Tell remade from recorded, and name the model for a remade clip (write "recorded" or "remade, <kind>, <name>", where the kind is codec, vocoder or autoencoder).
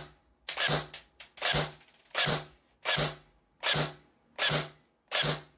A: recorded